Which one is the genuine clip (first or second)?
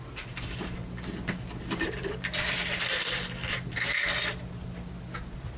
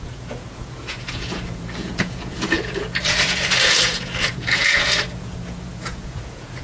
first